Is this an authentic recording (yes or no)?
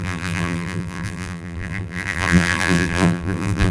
no